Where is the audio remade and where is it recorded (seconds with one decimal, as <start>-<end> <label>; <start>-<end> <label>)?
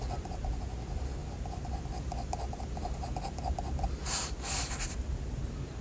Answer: 0.0-5.8 recorded